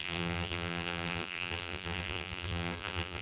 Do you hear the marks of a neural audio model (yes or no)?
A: yes